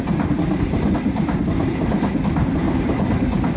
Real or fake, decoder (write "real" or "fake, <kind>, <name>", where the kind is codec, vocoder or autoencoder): real